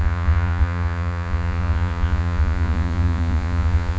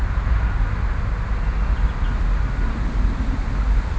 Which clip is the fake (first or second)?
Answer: first